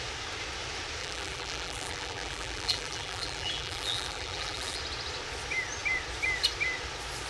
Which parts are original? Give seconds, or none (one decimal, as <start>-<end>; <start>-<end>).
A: 0.0-1.0; 4.8-7.3